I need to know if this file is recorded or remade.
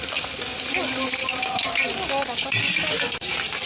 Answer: recorded